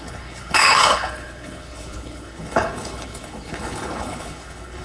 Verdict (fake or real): fake